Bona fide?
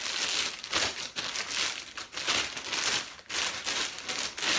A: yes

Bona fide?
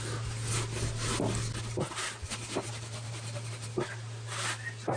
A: yes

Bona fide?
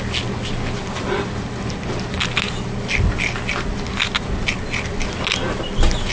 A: yes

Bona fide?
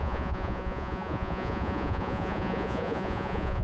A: no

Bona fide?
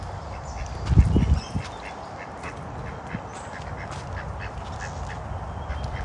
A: yes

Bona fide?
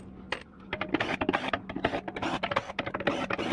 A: no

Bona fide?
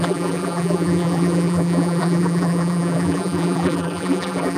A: no